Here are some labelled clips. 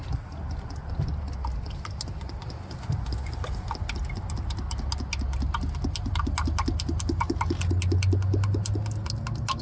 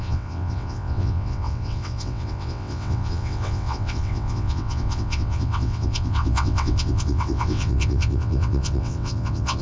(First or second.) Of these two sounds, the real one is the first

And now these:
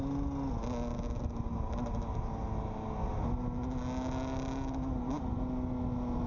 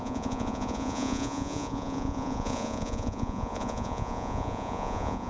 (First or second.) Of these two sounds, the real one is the first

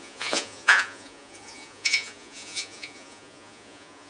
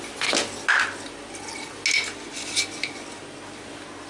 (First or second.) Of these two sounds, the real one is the second